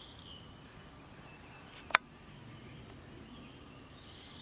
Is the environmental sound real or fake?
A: real